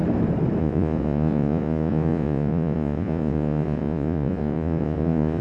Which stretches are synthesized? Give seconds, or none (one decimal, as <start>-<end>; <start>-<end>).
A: 0.6-5.4